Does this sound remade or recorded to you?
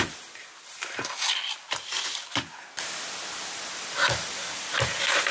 recorded